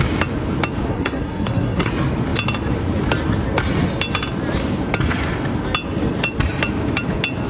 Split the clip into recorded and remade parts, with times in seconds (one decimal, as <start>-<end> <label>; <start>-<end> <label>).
0.0-0.9 recorded; 0.9-1.9 remade; 1.9-7.5 recorded